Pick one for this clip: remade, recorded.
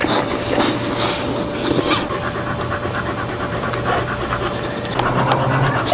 recorded